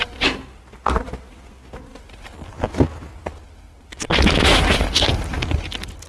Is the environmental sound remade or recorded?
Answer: recorded